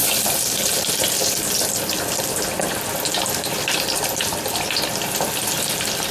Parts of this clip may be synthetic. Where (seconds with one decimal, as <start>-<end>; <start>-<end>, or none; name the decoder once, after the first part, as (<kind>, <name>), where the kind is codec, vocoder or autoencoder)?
none